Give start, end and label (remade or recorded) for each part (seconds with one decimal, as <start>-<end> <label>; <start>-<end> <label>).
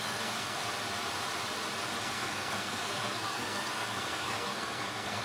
0.0-0.7 remade; 0.7-2.0 recorded; 2.0-5.2 remade